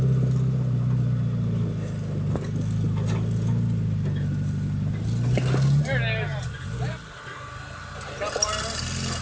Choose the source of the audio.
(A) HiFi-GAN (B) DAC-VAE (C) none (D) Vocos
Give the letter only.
C